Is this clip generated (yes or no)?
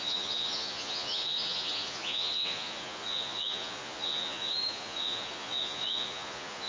yes